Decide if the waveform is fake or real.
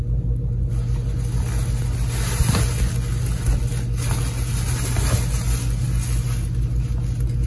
real